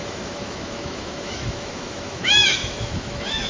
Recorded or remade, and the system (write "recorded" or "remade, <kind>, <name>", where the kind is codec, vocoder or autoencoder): remade, autoencoder, DAC-VAE